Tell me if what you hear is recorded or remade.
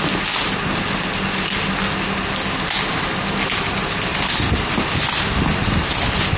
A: recorded